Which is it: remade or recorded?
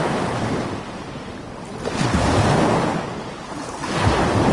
recorded